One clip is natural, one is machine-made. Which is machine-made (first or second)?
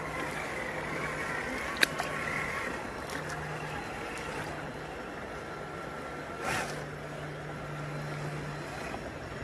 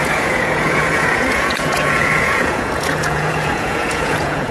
second